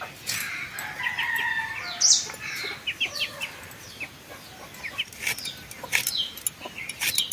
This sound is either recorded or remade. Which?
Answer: recorded